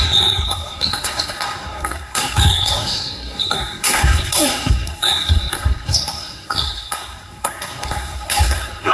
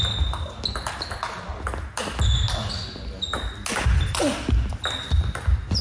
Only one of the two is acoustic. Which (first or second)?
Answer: second